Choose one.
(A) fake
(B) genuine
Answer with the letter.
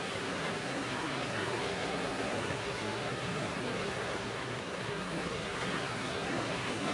A